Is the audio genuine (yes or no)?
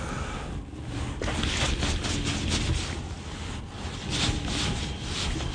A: yes